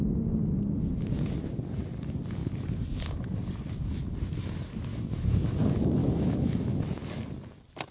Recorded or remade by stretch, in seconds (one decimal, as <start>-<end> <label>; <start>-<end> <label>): 0.0-4.9 recorded; 4.9-5.6 remade; 5.6-6.0 recorded; 6.0-6.9 remade; 6.9-7.9 recorded